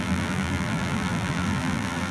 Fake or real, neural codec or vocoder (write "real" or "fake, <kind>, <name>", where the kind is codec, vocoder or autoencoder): fake, vocoder, BigVGAN v2